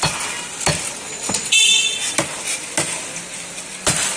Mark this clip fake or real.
real